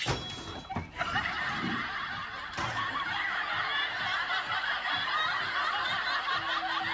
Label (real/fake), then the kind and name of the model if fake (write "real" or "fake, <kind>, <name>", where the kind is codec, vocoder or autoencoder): real